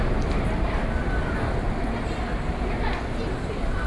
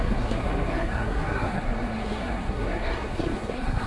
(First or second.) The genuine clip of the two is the first